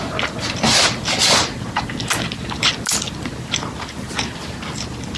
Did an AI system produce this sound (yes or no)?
no